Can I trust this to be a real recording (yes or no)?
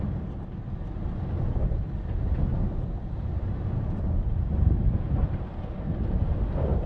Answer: yes